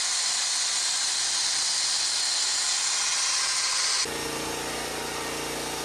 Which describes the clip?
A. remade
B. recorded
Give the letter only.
B